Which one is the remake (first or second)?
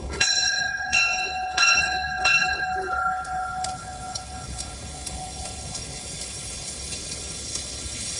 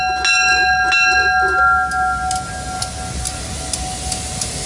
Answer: first